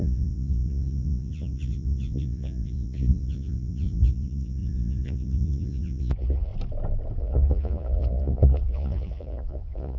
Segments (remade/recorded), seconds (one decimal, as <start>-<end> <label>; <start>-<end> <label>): 0.0-6.5 remade; 6.5-7.2 recorded; 7.2-10.0 remade